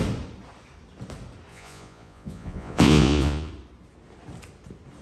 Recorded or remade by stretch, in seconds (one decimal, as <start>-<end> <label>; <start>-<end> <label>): 0.0-1.5 recorded; 1.5-3.5 remade; 3.5-5.0 recorded